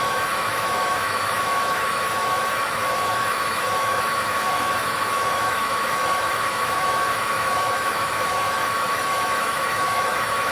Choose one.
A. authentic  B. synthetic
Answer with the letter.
B